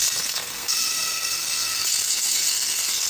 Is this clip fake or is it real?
fake